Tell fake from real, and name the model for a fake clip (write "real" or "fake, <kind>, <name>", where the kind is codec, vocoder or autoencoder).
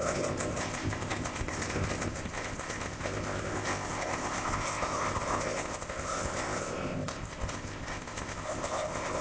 fake, codec, ZipCodec